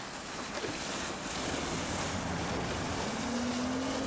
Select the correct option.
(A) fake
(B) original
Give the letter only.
B